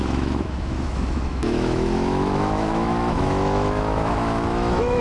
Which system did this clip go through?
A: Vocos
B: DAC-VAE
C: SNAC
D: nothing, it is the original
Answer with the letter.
B